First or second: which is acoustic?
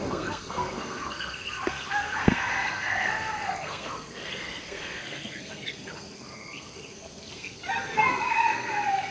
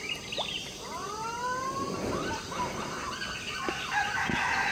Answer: second